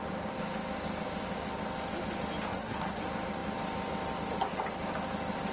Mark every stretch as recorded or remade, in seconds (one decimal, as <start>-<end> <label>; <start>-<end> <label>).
0.0-2.5 recorded; 2.5-3.0 remade; 3.0-5.5 recorded